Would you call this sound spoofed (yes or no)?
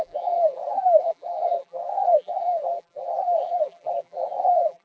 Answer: yes